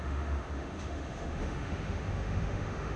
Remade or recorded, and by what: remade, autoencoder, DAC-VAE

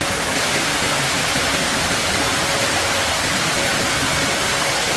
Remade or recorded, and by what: recorded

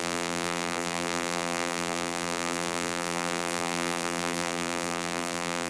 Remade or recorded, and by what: remade, vocoder, BigVGAN v2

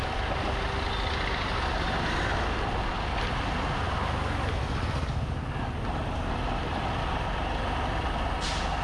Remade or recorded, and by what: recorded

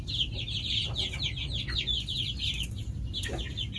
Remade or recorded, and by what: recorded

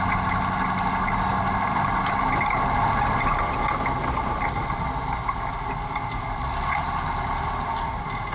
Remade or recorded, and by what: recorded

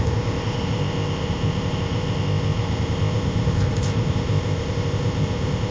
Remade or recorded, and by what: remade, codec, ZipCodec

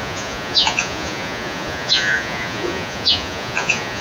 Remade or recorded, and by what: remade, vocoder, Vocos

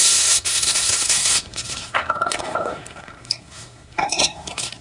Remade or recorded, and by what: remade, codec, SNAC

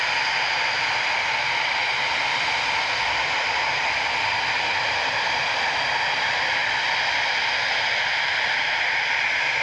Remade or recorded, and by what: recorded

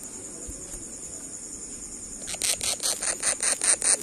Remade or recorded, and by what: recorded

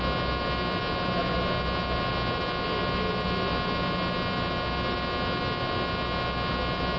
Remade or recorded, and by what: recorded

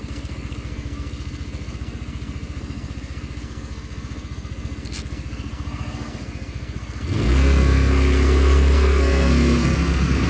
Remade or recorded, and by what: remade, codec, SNAC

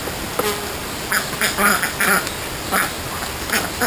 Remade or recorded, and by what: recorded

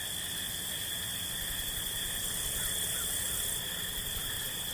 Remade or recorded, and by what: recorded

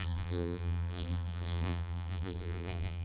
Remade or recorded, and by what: remade, vocoder, BigVGAN v2